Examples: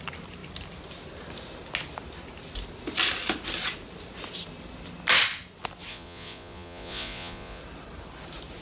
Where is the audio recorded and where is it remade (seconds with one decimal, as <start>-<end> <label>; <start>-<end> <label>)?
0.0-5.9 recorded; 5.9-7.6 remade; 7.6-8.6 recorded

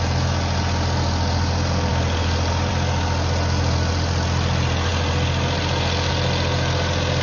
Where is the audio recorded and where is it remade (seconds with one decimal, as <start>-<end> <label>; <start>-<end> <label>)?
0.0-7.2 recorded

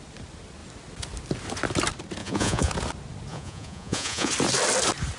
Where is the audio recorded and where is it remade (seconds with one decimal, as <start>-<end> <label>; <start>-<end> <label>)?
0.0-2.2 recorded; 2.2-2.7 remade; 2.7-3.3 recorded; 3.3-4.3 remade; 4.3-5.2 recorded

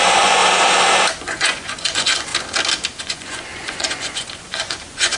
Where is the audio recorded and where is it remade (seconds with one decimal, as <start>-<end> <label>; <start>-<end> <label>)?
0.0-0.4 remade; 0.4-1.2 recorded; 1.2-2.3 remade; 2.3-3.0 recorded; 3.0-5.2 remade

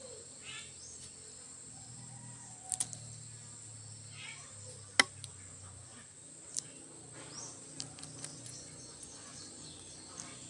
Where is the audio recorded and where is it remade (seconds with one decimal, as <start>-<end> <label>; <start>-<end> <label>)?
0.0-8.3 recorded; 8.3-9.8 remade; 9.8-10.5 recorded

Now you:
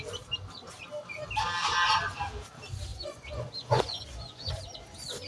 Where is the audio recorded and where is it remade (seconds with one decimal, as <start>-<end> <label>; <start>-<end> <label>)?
0.0-2.9 recorded; 2.9-4.5 remade; 4.5-5.3 recorded

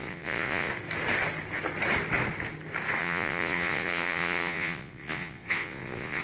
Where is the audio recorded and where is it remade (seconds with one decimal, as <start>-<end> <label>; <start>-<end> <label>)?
0.0-0.7 remade; 0.7-3.0 recorded; 3.0-6.2 remade